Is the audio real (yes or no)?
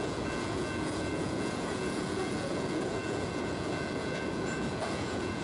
no